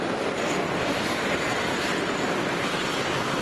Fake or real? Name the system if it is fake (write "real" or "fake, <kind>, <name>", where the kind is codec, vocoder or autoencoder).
real